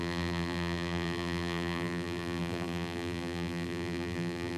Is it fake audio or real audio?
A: fake